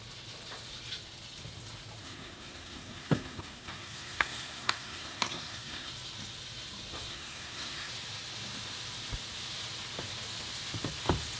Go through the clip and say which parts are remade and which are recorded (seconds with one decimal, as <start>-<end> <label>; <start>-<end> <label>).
0.0-2.0 recorded; 2.0-5.9 remade; 5.9-7.1 recorded; 7.1-7.9 remade; 7.9-11.4 recorded